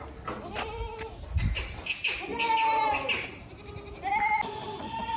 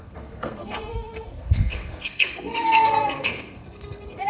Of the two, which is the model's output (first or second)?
second